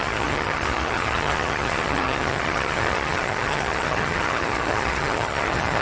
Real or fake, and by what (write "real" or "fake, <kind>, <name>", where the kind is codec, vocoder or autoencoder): fake, vocoder, HiFi-GAN